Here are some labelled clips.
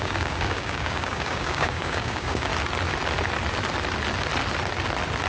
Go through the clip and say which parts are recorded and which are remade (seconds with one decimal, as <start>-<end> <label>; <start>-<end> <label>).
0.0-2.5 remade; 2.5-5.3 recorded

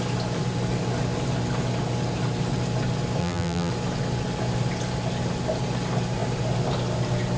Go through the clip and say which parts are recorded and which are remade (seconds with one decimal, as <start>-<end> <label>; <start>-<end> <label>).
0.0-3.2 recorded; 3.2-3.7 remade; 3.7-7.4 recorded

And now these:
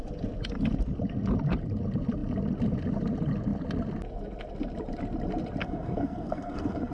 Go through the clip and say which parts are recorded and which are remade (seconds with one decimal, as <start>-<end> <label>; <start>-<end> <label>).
0.0-5.6 recorded; 5.6-6.9 remade

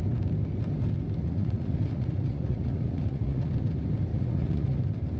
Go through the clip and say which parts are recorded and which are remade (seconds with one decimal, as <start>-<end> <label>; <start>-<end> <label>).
0.0-1.2 recorded; 1.2-3.5 remade; 3.5-4.1 recorded; 4.1-4.8 remade; 4.8-5.2 recorded